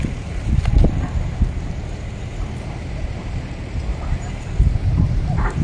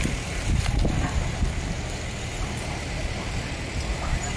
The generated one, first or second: first